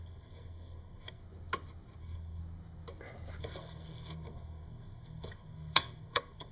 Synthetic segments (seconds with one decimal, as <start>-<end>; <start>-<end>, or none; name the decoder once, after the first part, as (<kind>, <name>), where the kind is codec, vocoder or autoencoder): 0.0-1.2 (codec, SNAC); 2.0-2.4; 3.4-6.5